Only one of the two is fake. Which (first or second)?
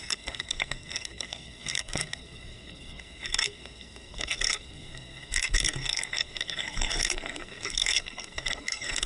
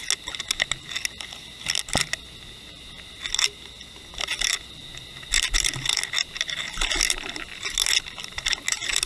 first